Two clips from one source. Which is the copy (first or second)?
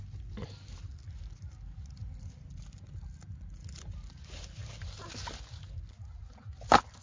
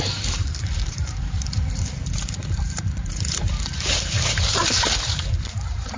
second